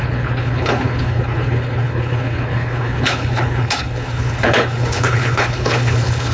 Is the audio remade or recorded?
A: remade